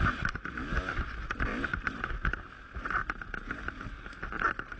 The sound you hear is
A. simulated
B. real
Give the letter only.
B